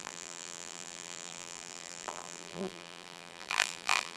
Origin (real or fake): fake